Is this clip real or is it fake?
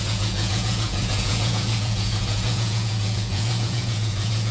fake